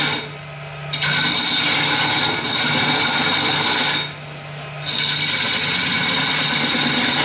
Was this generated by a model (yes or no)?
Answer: no